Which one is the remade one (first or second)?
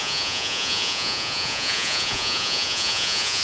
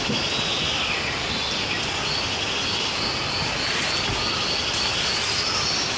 first